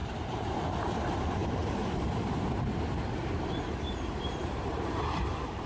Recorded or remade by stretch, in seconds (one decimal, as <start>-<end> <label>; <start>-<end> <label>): 0.0-5.7 remade